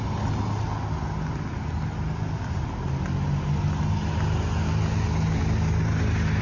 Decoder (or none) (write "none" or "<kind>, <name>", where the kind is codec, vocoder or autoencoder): none